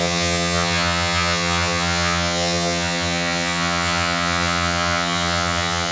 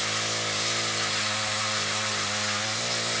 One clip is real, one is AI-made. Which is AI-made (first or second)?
first